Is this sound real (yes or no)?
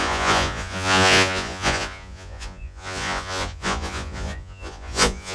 no